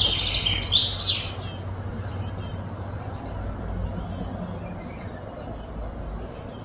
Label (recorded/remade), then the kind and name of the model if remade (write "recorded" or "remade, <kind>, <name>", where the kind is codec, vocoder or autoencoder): recorded